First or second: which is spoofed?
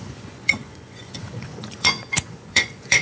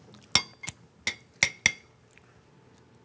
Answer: first